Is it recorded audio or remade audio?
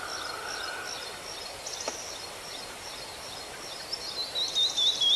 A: recorded